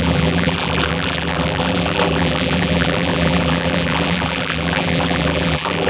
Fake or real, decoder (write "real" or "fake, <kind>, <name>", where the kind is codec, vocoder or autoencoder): fake, vocoder, BigVGAN v2